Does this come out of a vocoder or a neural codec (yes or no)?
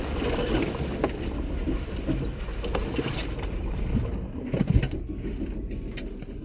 no